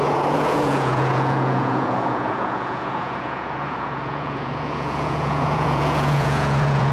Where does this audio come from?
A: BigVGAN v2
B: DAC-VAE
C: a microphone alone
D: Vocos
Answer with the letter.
D